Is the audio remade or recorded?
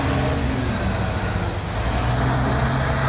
recorded